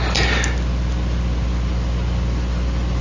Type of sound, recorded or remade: recorded